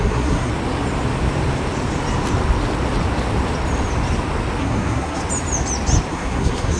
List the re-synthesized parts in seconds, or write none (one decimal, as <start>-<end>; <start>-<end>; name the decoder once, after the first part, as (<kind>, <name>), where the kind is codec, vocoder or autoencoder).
0.0-0.5 (codec, SNAC); 4.6-5.2; 6.1-6.8